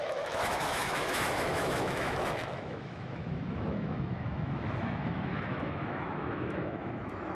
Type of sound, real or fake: fake